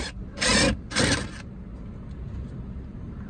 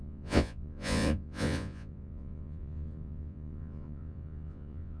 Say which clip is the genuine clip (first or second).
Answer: first